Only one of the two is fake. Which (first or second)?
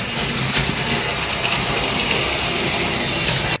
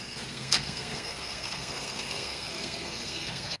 second